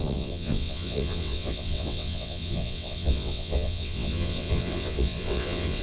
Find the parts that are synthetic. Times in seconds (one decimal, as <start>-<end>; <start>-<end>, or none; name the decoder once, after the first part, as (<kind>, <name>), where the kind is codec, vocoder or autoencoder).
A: 0.0-5.8 (vocoder, WaveNeXt)